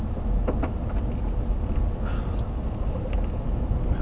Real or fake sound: real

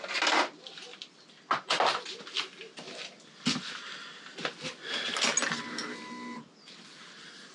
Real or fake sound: real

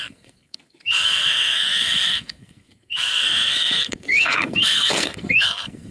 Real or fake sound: fake